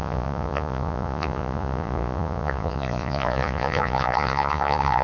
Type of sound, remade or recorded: remade